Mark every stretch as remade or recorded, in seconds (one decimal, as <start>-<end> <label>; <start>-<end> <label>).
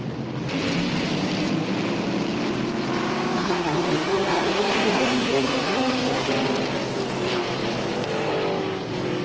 0.0-3.4 recorded; 3.4-6.3 remade; 6.3-9.2 recorded